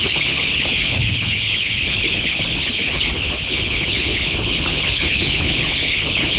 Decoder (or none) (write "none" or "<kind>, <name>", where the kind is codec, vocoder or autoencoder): codec, HILCodec